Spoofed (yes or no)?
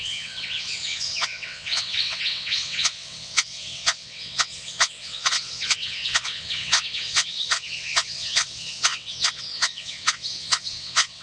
yes